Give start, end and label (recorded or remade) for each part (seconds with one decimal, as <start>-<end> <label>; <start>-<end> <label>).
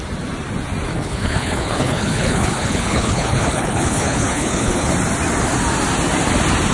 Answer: 0.0-0.9 recorded; 0.9-4.9 remade; 4.9-6.7 recorded